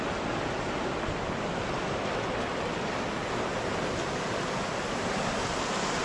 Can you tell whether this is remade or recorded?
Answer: recorded